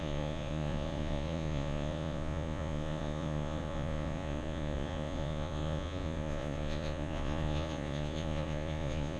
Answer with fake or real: fake